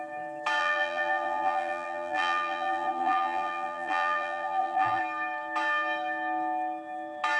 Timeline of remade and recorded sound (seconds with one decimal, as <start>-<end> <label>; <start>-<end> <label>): 0.0-0.6 recorded; 0.6-5.0 remade; 5.0-7.4 recorded